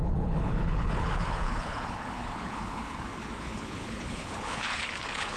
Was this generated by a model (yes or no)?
yes